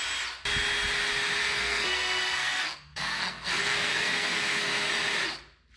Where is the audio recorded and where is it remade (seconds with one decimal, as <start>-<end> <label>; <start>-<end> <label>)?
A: 0.0-1.4 recorded; 1.4-4.9 remade; 4.9-5.8 recorded